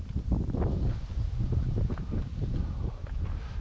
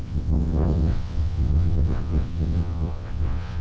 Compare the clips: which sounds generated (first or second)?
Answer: second